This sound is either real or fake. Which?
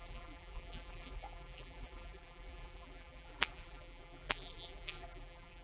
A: fake